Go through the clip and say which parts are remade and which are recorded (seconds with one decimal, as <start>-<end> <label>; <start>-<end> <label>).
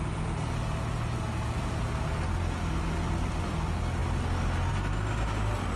0.0-5.8 recorded